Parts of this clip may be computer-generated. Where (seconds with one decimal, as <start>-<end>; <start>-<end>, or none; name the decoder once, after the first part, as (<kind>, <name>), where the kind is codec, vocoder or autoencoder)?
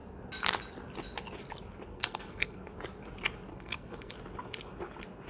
1.9-2.7 (codec, SNAC); 3.5-4.1